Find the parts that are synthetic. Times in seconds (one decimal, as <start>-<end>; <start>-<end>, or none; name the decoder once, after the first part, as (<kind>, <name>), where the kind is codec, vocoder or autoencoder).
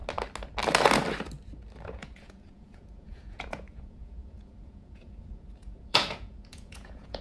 1.9-7.2 (vocoder, Vocos)